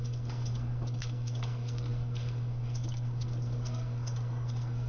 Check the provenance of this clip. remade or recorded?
remade